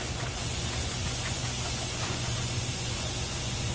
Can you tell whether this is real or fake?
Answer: fake